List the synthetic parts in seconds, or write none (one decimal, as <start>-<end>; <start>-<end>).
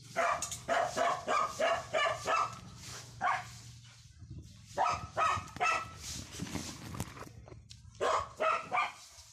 2.9-3.6